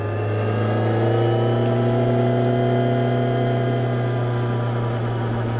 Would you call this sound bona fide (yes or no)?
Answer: yes